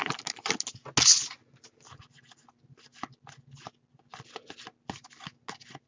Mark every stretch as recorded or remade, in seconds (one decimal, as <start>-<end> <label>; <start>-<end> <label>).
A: 0.0-5.9 recorded